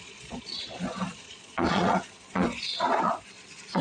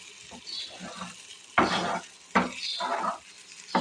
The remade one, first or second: first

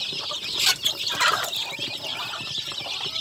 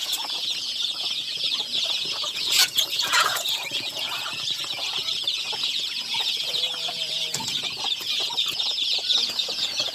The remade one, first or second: second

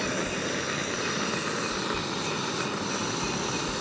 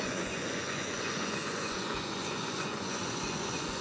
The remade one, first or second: second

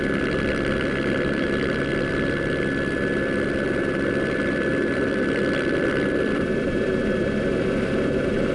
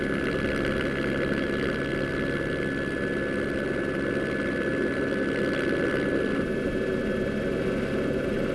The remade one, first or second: first